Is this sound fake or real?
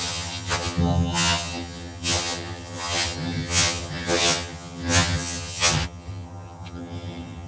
fake